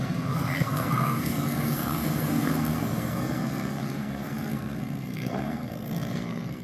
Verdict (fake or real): fake